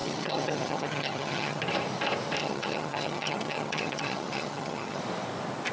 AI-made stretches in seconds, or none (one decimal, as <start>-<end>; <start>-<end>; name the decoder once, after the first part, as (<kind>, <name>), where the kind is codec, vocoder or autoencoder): 0.0-1.6 (vocoder, HiFi-GAN); 2.4-5.0